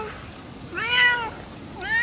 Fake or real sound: real